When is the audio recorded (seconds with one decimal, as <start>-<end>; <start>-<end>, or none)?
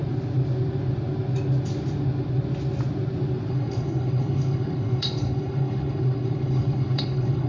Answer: 0.0-3.5